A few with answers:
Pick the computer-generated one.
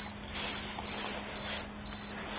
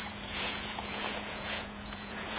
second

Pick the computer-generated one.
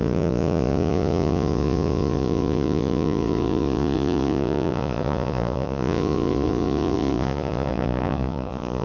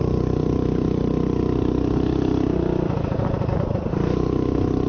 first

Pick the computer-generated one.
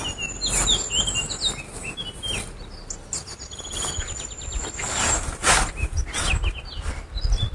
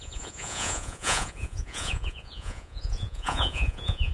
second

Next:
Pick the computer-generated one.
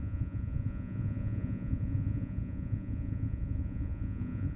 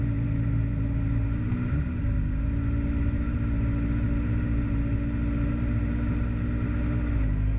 first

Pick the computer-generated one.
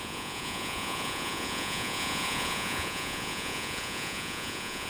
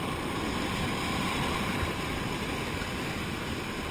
first